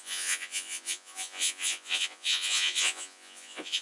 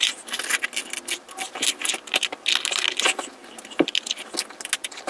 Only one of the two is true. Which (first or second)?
second